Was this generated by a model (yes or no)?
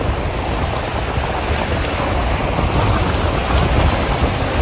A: no